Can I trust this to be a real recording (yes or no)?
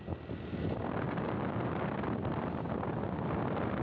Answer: yes